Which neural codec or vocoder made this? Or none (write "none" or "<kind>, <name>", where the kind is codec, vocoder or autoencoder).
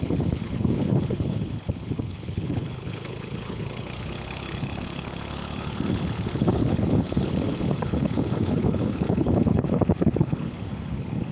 codec, HILCodec